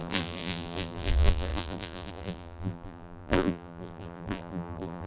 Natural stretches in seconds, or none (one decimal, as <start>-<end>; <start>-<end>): none